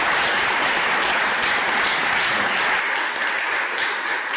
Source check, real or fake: real